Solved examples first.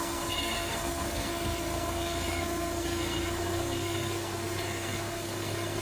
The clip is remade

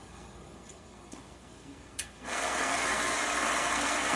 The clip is remade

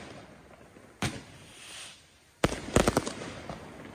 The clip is recorded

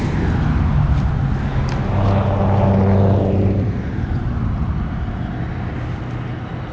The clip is recorded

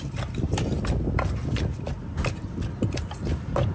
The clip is recorded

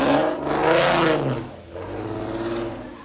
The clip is recorded